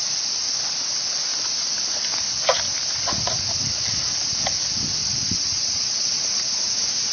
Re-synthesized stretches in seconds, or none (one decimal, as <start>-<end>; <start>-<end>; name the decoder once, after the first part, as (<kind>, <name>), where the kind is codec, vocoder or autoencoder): 5.0-6.5 (vocoder, WaveNeXt)